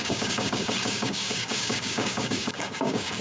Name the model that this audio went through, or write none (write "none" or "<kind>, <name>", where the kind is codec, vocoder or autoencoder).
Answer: codec, DAC